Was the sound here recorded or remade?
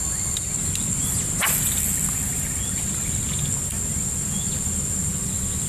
recorded